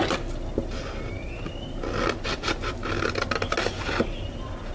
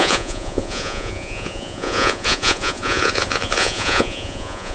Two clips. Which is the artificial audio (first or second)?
second